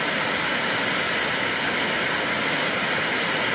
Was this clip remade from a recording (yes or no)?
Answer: no